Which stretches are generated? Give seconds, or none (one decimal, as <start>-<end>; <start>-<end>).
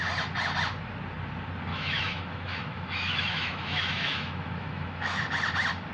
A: 1.7-5.2